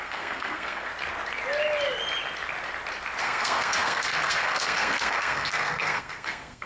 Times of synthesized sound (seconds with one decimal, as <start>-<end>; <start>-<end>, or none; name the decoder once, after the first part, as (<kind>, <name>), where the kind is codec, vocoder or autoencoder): 0.0-0.9 (codec, SNAC); 3.2-6.7